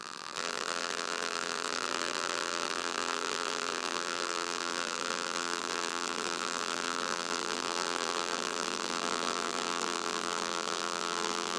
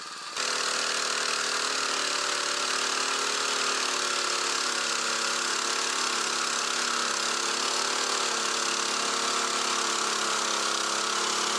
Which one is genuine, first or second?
second